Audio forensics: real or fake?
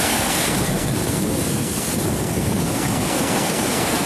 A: fake